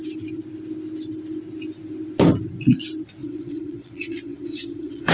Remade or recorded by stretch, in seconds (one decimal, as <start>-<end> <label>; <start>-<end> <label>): 0.0-3.2 recorded; 3.2-5.1 remade